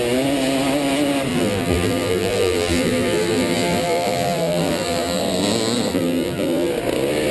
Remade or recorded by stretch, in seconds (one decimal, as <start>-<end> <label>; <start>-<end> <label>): 0.0-1.3 recorded; 1.3-5.2 remade; 5.2-5.9 recorded; 5.9-6.7 remade; 6.7-7.3 recorded